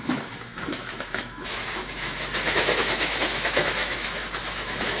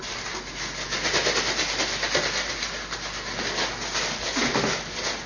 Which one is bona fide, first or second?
second